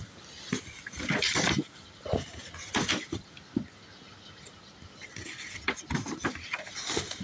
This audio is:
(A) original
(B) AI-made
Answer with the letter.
A